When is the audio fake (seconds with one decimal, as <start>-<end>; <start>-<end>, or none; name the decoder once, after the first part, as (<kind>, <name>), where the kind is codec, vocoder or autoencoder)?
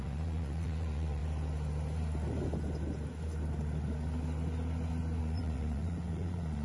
0.0-1.2 (vocoder, Vocos); 5.2-6.6